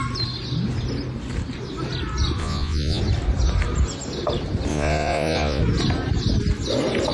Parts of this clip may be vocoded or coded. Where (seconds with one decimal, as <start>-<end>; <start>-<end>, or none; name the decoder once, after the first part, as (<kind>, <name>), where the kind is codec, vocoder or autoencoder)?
2.4-3.0 (vocoder, Vocos); 4.7-5.6